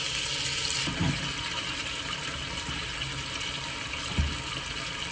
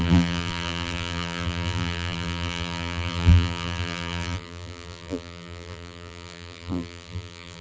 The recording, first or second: first